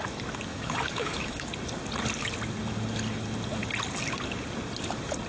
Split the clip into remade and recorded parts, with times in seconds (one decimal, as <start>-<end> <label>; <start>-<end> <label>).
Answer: 0.0-0.5 recorded; 0.5-1.5 remade; 1.5-5.3 recorded